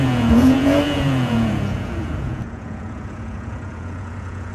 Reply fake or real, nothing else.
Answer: fake